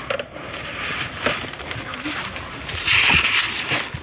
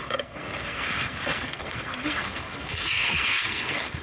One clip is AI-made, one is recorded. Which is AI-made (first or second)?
second